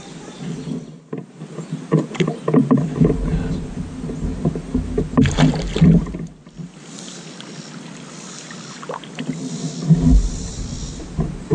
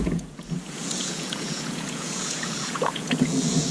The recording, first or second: first